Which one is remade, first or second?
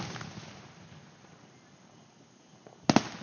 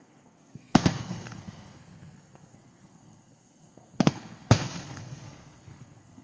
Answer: second